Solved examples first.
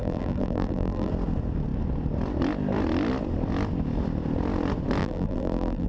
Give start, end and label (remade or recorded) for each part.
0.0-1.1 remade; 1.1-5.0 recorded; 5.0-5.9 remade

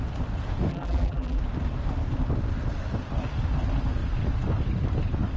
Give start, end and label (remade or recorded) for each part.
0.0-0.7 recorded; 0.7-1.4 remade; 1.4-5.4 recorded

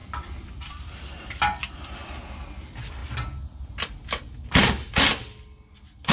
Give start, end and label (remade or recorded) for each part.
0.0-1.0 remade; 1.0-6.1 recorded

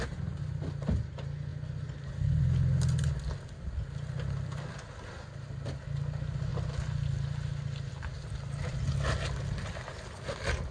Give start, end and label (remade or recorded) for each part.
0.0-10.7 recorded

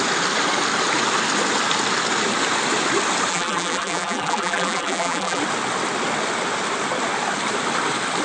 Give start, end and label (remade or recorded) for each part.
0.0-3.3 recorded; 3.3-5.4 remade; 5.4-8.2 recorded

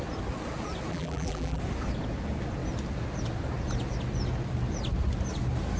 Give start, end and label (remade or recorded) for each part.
0.0-0.9 recorded; 0.9-1.6 remade; 1.6-5.8 recorded